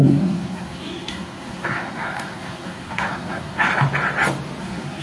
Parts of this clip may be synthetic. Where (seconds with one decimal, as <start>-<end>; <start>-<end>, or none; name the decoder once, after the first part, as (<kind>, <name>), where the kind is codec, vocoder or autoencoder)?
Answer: 0.0-3.7 (codec, SNAC); 4.6-5.0